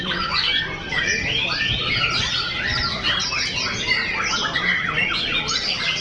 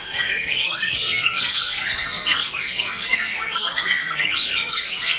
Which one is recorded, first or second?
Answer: first